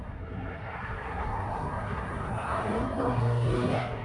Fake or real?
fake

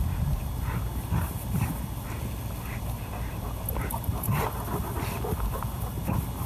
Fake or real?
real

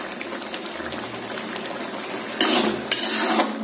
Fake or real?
real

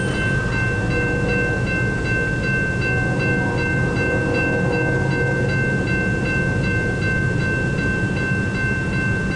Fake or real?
real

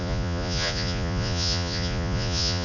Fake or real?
fake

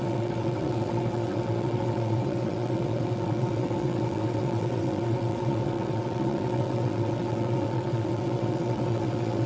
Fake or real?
fake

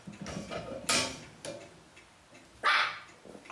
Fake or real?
real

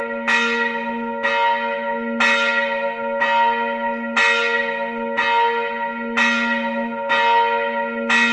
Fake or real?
real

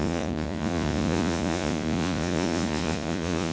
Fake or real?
fake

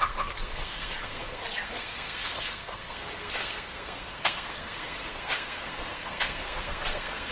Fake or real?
fake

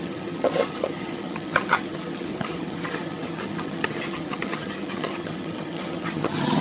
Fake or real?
fake